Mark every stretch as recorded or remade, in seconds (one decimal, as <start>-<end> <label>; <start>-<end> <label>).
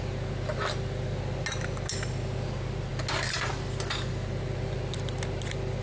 0.0-5.8 recorded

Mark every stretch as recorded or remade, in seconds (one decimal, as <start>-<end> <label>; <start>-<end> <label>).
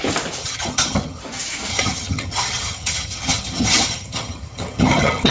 0.0-0.4 recorded; 0.4-1.2 remade; 1.2-1.7 recorded; 1.7-5.3 remade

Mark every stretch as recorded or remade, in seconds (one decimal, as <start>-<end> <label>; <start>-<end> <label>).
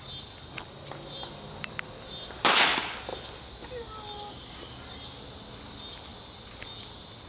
0.0-7.3 recorded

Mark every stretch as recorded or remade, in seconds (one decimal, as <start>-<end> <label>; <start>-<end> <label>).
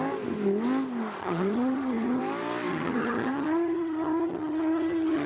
0.0-1.2 recorded; 1.2-2.2 remade; 2.2-2.7 recorded; 2.7-5.3 remade